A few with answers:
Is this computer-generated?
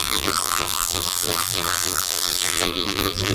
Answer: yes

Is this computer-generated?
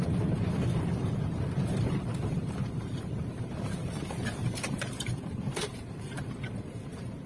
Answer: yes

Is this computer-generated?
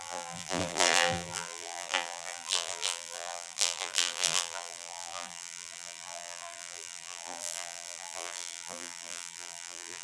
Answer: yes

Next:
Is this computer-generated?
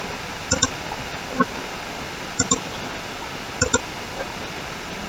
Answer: no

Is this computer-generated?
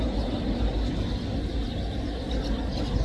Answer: no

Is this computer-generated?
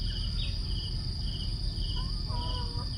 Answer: no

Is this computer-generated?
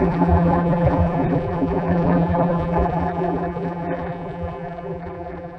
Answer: yes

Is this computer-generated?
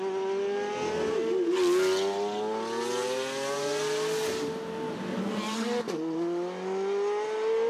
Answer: no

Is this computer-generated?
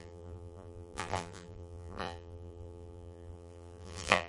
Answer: yes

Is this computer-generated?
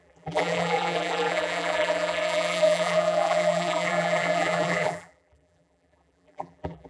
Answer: yes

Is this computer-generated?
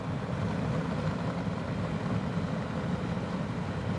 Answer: no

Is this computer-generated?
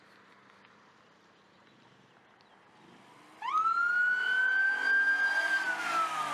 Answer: no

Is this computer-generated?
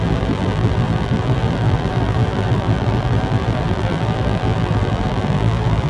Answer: yes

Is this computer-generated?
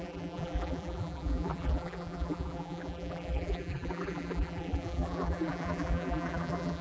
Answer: yes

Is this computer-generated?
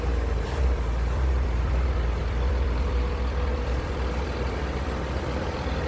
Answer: yes